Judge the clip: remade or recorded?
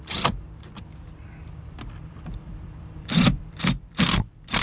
remade